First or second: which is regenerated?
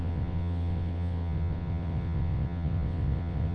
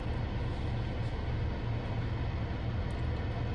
first